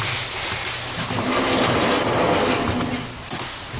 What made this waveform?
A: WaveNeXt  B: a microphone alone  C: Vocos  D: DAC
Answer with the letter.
B